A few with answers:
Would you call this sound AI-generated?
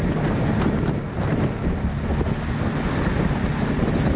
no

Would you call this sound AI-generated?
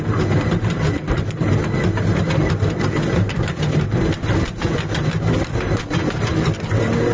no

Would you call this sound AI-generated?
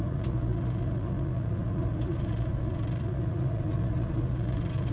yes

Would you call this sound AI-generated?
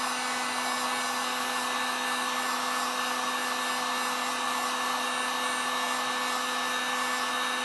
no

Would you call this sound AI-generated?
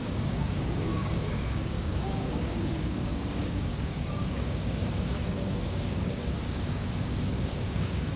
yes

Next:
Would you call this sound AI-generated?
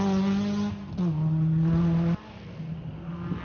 no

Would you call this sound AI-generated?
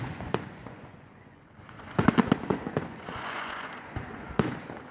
yes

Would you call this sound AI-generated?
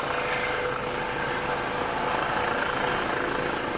no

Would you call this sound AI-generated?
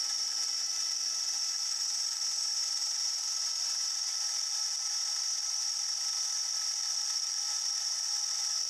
no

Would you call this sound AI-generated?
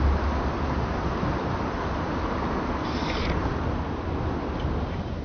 no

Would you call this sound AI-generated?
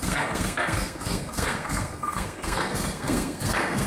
yes